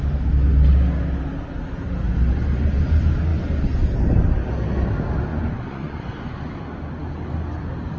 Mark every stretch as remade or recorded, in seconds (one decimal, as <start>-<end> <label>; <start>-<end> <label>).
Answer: 0.0-5.3 recorded; 5.3-6.6 remade; 6.6-8.0 recorded